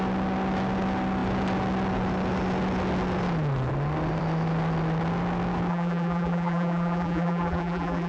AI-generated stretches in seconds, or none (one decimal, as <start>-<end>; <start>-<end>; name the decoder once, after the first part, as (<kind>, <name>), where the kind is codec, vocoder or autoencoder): 5.7-8.1 (vocoder, BigVGAN v2)